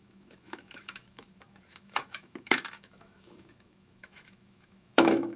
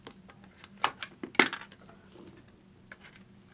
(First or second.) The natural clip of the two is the second